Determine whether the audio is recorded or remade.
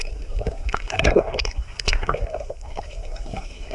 remade